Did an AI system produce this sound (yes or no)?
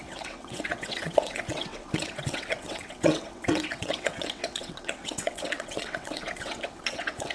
yes